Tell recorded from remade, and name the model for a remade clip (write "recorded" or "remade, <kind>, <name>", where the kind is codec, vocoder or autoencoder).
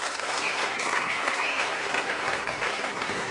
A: remade, codec, SNAC